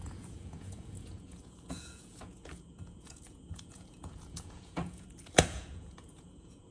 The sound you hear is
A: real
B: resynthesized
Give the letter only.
B